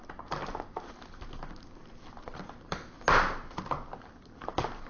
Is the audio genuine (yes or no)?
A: yes